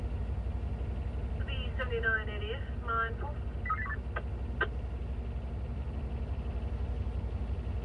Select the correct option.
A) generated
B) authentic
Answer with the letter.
B